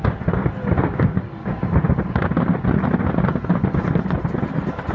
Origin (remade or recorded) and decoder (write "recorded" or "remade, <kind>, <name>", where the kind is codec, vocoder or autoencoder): recorded